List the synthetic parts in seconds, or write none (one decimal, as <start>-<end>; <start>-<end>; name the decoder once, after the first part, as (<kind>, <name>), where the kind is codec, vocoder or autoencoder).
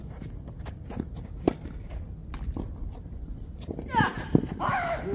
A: none